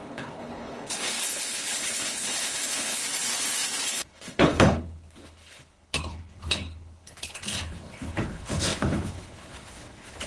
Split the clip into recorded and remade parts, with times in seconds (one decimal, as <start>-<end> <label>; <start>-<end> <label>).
0.0-3.0 remade; 3.0-3.8 recorded; 3.8-10.3 remade